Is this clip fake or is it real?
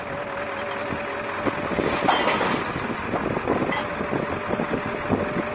real